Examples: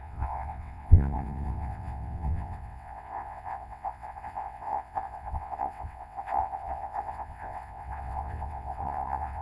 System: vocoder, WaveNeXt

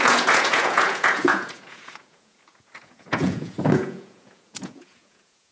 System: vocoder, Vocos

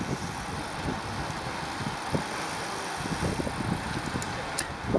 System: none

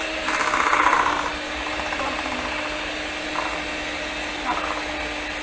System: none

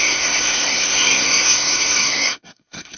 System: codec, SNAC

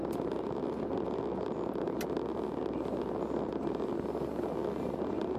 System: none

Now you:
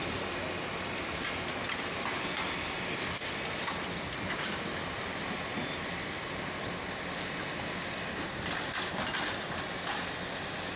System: none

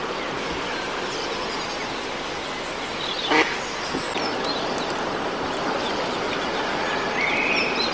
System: none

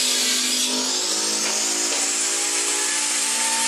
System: none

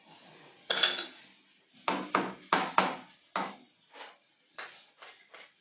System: none